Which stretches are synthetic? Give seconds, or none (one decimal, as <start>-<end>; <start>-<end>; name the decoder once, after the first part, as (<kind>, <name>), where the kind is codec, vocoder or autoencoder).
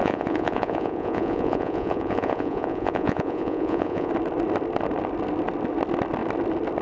0.0-4.1 (vocoder, Vocos)